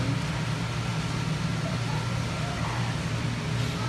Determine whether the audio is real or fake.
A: real